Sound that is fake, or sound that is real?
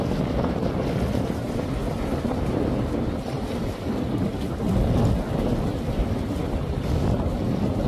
real